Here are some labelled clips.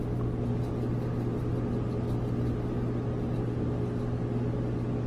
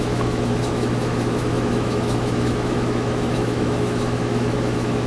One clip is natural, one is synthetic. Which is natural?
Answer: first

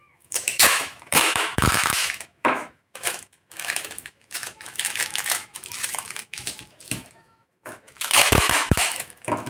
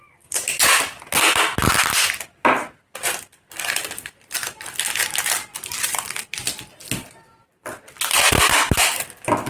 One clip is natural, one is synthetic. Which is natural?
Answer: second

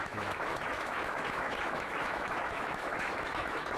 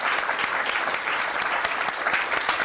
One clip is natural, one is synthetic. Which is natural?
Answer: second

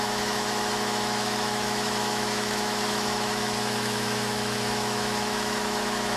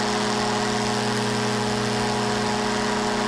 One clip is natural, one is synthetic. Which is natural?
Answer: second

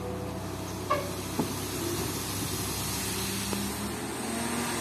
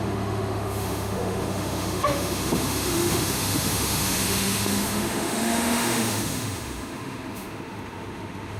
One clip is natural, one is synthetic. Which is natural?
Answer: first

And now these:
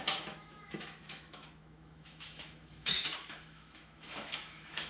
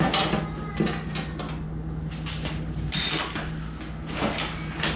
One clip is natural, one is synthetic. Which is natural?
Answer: second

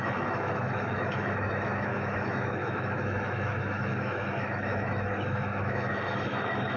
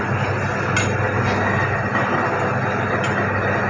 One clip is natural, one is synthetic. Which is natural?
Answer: second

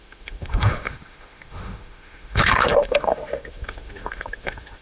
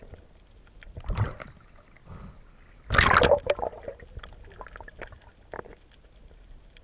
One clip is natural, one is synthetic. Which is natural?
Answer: second